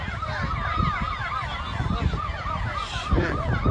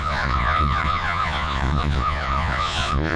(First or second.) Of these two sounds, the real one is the first